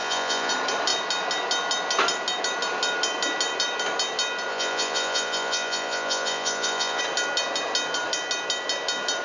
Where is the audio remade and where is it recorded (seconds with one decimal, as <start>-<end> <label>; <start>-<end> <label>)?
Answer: 0.0-0.5 remade; 0.5-4.5 recorded; 4.5-7.0 remade; 7.0-9.2 recorded